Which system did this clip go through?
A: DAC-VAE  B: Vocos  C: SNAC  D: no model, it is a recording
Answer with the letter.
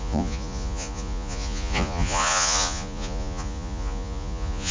B